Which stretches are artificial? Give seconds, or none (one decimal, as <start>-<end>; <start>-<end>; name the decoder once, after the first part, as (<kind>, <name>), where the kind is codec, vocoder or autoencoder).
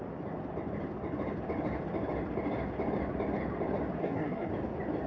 4.0-4.5 (codec, SNAC)